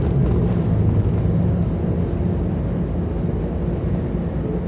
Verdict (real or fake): real